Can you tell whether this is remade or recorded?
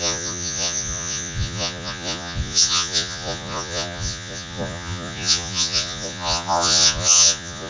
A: remade